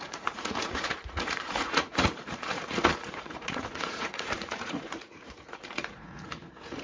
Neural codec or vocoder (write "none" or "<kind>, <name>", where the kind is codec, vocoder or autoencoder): vocoder, Vocos